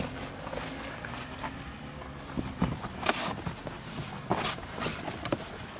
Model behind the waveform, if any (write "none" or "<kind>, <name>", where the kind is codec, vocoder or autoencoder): none